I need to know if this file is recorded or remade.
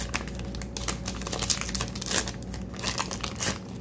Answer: recorded